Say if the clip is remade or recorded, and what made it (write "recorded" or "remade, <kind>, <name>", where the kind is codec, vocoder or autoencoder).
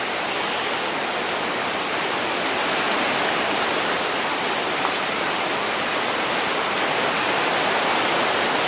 recorded